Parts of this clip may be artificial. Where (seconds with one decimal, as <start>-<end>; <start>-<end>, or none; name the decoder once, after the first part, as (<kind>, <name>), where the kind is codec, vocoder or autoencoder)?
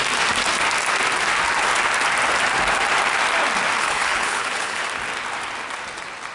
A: 3.8-4.8 (codec, HILCodec)